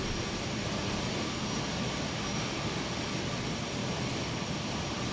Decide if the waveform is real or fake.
real